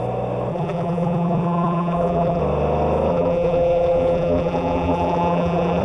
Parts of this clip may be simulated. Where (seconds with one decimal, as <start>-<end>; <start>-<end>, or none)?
0.5-2.4; 3.1-5.8